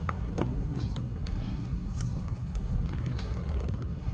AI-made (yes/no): yes